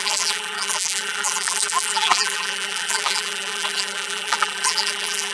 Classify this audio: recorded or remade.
remade